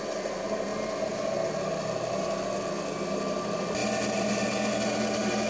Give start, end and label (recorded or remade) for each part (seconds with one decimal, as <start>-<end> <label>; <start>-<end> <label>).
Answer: 0.0-5.5 recorded